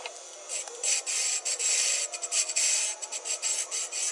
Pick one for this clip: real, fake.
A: real